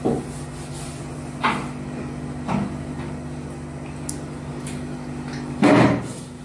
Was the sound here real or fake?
real